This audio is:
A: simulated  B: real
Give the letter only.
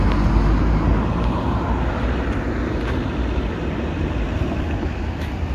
B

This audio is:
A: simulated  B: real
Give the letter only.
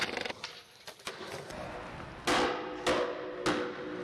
B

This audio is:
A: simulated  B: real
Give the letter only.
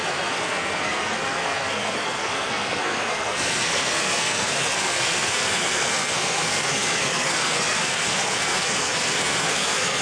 A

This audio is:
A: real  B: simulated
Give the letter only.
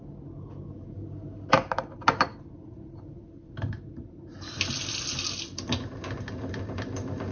A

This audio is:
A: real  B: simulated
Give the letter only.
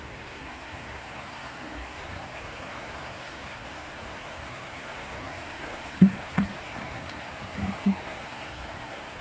B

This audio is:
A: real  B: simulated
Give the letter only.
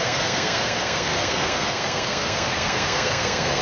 B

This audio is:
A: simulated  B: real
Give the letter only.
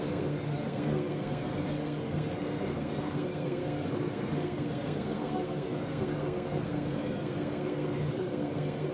A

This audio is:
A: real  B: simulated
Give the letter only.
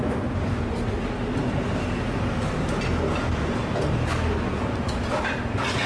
A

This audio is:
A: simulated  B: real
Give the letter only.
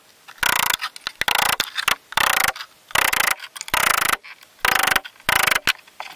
B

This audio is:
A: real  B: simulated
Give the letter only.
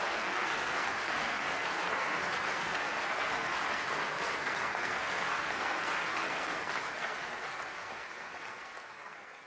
B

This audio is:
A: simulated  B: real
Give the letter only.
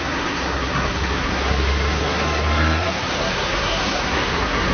A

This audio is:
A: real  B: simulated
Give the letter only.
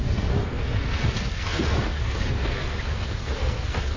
B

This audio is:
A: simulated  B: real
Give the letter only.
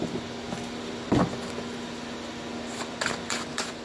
B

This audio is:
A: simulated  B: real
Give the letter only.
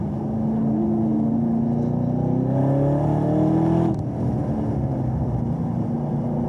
B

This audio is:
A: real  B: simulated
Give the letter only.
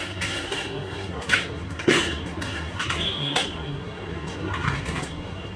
B